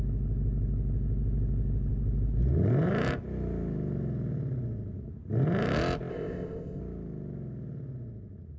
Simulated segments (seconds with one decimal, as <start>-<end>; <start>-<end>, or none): 6.1-6.8